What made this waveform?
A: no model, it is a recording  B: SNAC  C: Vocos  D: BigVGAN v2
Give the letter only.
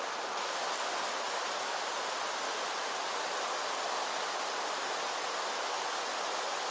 A